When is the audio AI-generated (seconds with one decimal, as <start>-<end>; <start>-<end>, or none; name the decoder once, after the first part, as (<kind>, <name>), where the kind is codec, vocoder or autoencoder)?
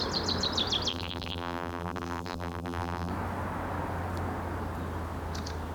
0.9-3.1 (vocoder, BigVGAN v2)